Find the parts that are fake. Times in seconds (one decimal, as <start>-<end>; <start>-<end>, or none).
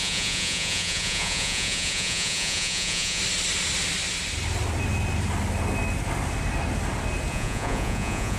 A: 0.0-3.2; 7.3-8.4